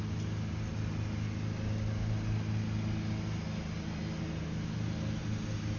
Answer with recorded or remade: recorded